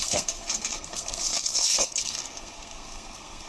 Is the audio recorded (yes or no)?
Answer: no